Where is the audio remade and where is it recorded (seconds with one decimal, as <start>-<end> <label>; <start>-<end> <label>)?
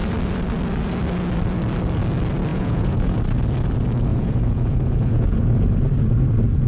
0.0-2.5 recorded; 2.5-3.2 remade; 3.2-4.1 recorded; 4.1-5.4 remade; 5.4-6.7 recorded